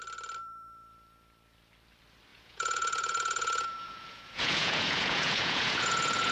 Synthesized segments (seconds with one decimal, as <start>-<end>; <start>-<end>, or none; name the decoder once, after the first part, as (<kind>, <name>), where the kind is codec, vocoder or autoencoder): 2.3-6.3 (vocoder, Vocos)

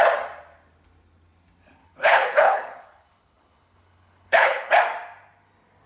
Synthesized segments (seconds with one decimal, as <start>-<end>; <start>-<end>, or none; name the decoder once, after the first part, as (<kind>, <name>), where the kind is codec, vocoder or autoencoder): 1.8-4.8 (codec, HILCodec)

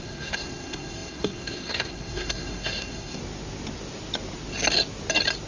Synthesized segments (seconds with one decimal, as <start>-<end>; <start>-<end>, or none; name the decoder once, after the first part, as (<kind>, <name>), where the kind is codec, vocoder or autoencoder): 0.0-3.2 (codec, SNAC)

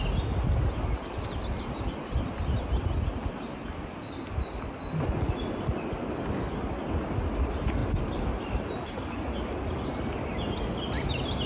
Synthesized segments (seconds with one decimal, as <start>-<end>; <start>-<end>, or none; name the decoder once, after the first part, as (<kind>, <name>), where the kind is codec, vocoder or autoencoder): none

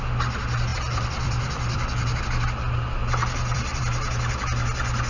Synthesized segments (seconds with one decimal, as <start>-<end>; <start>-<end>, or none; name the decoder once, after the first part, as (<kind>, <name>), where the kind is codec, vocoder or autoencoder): 0.7-2.2 (vocoder, BigVGAN v2); 3.0-3.8